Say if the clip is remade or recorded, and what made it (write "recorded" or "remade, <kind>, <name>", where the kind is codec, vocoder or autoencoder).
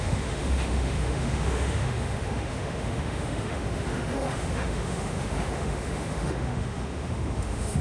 remade, autoencoder, DAC-VAE